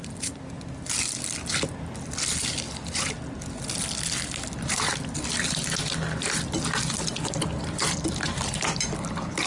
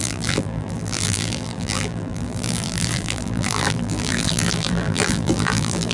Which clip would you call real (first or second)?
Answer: first